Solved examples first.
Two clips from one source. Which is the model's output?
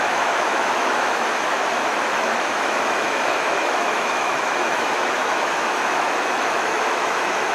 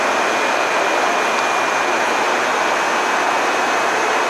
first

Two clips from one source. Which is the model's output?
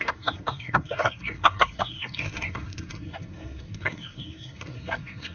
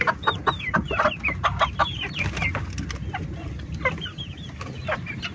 first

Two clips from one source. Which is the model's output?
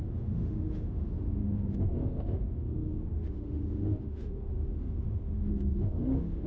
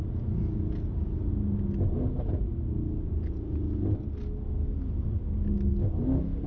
first